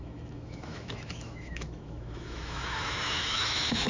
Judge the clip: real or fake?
fake